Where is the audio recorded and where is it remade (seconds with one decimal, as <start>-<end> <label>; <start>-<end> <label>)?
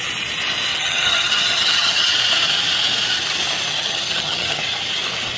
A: 0.0-0.7 recorded; 0.7-2.1 remade; 2.1-3.7 recorded; 3.7-4.6 remade; 4.6-5.4 recorded